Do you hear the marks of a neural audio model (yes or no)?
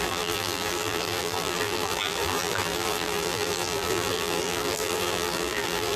yes